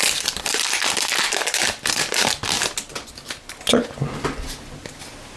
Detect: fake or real real